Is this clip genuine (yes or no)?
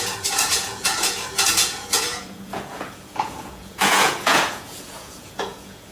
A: no